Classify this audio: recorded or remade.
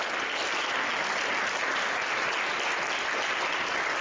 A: recorded